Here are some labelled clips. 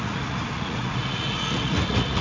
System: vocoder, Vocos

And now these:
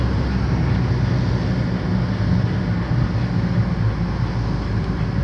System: none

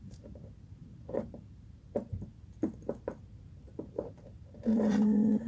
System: vocoder, BigVGAN v2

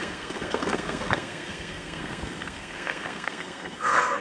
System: codec, SNAC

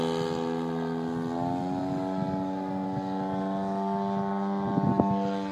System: none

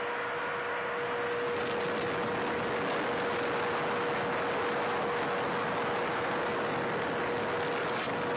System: none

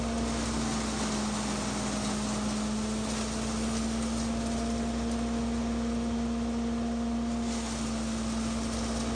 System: none